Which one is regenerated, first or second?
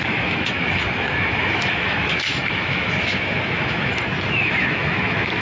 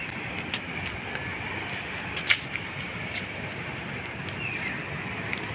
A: first